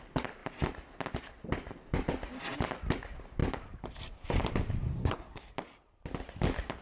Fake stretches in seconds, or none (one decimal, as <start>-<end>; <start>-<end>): 4.9-5.5